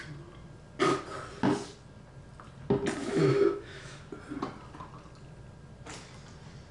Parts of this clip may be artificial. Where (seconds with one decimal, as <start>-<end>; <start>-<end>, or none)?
3.0-4.1